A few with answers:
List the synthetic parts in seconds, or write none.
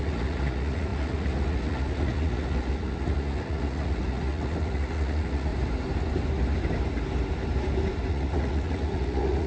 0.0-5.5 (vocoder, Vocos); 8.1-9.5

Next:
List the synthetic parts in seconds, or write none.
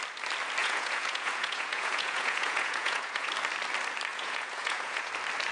0.6-3.3 (vocoder, Vocos); 4.1-5.1